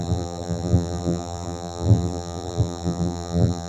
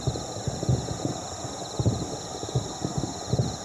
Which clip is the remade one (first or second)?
first